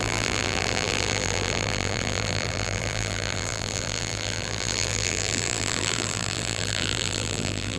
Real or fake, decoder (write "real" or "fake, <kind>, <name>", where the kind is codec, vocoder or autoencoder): fake, vocoder, BigVGAN v2